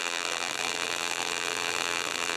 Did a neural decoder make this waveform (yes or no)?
yes